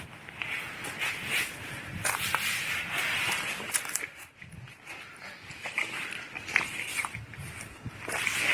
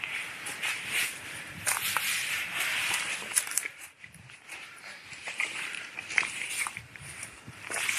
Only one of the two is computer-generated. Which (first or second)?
second